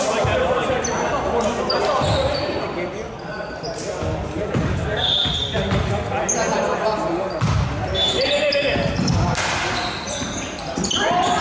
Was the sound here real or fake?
real